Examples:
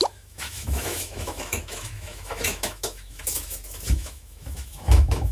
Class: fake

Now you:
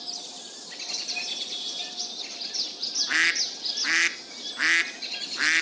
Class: real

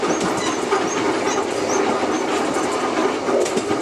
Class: real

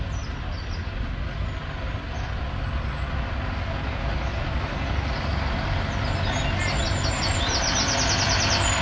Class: real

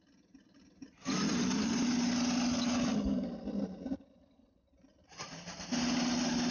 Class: real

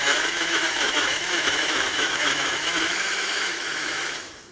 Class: fake